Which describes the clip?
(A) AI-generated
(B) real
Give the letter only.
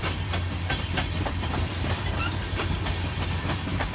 A